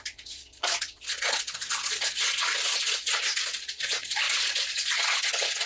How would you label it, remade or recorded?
remade